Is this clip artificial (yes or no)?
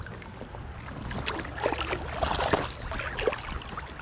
no